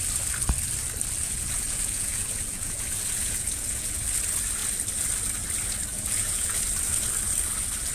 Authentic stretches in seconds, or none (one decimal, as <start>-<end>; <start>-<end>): 0.0-1.2; 4.0-5.9; 6.6-7.9